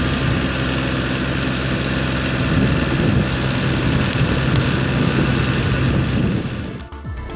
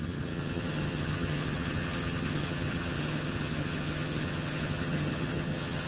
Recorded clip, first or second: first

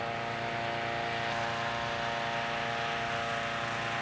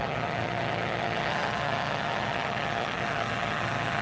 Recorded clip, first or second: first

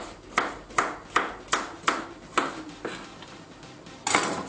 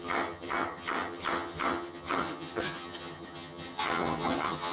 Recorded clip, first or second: first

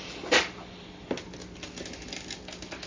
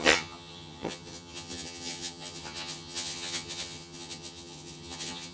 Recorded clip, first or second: first